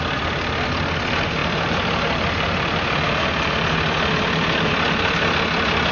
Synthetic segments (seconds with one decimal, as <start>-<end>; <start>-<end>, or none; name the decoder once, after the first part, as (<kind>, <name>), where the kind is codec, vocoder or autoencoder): none